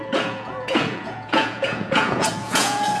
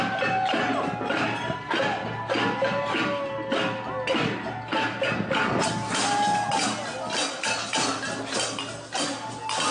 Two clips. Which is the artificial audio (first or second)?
first